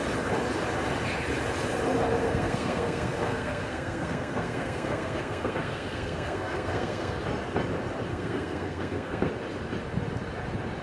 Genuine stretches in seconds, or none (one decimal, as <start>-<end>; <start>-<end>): 0.0-2.2; 7.2-8.1; 9.3-10.8